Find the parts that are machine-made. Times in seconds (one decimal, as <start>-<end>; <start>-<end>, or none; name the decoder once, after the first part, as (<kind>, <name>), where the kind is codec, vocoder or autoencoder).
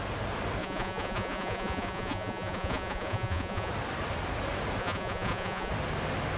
0.6-3.7 (vocoder, Vocos); 4.8-5.7